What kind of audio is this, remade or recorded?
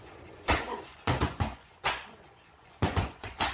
remade